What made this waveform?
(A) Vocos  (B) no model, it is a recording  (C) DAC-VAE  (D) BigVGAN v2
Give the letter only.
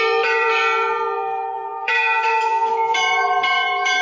D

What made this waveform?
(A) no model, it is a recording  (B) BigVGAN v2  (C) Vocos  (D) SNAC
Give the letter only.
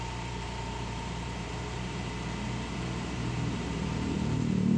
B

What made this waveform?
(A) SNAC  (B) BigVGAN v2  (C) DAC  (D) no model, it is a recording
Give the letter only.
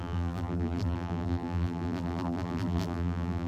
B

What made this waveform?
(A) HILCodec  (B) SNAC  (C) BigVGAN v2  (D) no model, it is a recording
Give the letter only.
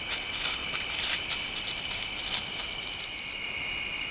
D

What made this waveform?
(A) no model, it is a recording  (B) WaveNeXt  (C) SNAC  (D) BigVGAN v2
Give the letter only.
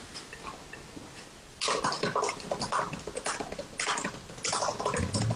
A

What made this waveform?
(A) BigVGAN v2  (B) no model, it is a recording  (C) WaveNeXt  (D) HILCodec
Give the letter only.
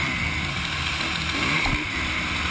B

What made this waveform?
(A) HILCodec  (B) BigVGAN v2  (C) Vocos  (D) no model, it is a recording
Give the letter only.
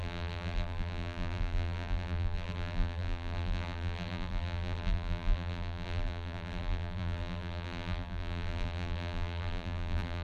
B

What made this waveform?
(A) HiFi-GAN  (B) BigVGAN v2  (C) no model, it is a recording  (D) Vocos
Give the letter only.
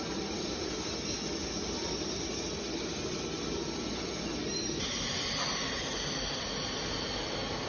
C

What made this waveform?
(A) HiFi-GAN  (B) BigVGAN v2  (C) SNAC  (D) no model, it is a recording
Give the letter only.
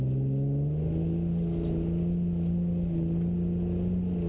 D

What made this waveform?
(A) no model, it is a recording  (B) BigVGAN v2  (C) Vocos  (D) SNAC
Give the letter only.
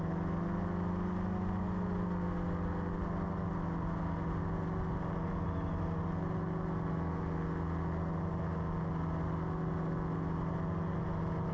A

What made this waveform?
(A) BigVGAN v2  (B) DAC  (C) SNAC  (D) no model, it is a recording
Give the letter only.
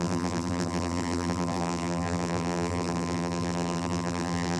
A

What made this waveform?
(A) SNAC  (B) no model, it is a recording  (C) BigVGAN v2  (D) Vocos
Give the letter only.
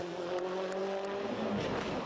B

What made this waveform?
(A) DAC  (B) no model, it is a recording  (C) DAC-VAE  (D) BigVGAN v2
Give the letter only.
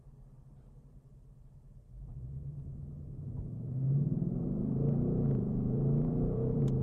D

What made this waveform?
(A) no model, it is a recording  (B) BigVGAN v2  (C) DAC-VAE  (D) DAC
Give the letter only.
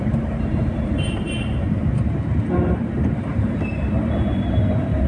B